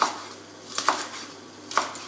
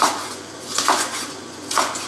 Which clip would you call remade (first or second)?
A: second